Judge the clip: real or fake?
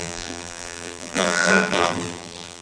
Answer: fake